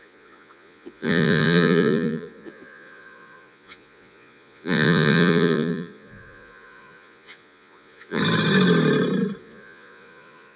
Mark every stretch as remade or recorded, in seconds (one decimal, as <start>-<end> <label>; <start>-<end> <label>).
0.0-8.2 remade; 8.2-9.4 recorded; 9.4-10.6 remade